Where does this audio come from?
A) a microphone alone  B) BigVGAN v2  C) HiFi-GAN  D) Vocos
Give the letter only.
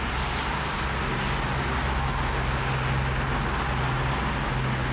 A